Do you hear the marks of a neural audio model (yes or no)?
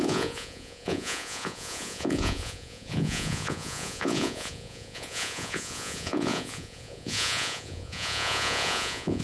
yes